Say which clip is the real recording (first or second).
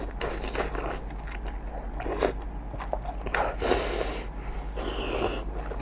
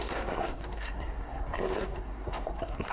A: first